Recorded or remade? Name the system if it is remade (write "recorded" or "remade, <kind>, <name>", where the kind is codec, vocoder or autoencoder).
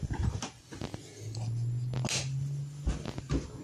recorded